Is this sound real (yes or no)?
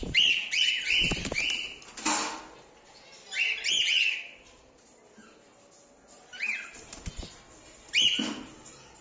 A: yes